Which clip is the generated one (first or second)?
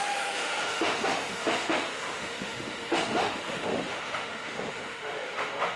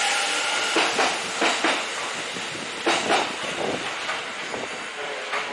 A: first